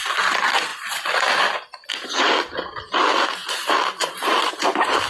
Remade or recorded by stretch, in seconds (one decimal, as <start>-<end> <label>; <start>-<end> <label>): 0.0-5.1 recorded

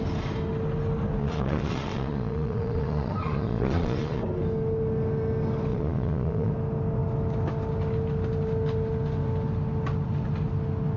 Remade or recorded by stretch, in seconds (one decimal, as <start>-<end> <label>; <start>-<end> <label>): 0.0-1.2 recorded; 1.2-4.2 remade; 4.2-5.7 recorded; 5.7-6.5 remade; 6.5-11.0 recorded

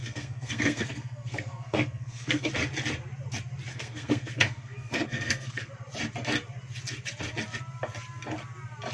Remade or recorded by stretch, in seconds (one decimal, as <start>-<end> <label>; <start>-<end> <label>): 0.0-2.5 remade; 2.5-3.7 recorded; 3.7-5.7 remade; 5.7-8.9 recorded

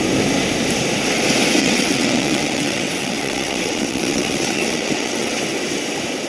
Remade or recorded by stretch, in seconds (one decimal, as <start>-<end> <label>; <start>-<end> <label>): 0.0-1.6 recorded; 1.6-5.4 remade; 5.4-6.3 recorded

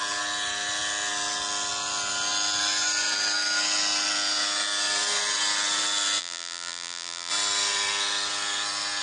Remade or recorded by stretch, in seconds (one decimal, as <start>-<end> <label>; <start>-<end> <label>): 0.0-6.2 recorded; 6.2-7.3 remade; 7.3-9.0 recorded